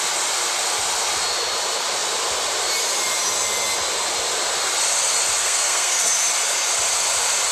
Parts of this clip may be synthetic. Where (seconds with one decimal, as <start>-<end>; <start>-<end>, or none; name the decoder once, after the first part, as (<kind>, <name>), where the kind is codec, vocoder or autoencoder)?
5.4-6.0 (codec, SNAC)